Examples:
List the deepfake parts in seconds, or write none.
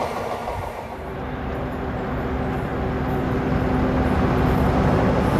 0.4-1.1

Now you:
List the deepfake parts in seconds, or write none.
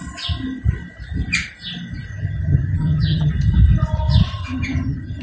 2.1-3.3; 4.4-5.2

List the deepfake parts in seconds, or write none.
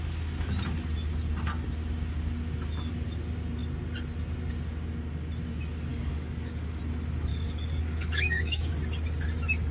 5.9-6.8; 7.3-8.7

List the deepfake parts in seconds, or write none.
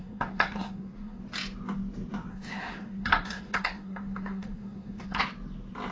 0.0-1.2; 2.3-5.2